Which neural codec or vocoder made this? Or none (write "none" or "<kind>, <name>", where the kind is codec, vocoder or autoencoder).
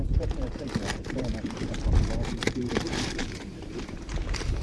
vocoder, BigVGAN v2